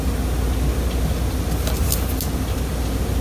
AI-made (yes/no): no